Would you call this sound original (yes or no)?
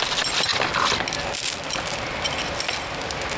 yes